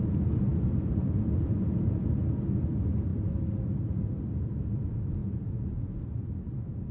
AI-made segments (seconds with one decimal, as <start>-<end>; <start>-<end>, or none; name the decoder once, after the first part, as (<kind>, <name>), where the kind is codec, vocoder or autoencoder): 5.2-6.0 (vocoder, Vocos)